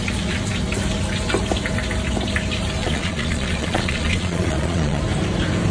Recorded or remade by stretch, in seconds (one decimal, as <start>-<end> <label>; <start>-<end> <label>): 0.0-2.8 recorded; 2.8-5.0 remade; 5.0-5.7 recorded